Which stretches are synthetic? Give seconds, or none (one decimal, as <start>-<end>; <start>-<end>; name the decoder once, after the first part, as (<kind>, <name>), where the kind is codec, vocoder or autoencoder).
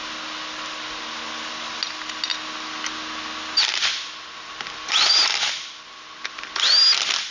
none